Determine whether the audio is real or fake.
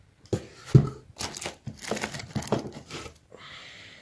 real